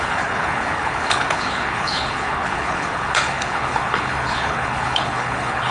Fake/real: fake